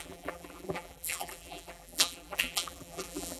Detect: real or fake fake